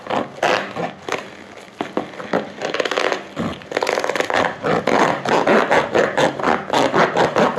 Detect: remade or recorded recorded